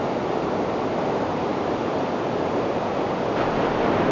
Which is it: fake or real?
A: real